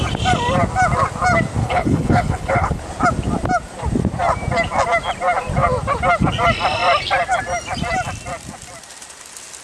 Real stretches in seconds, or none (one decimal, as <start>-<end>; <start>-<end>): 0.0-1.6; 2.8-9.6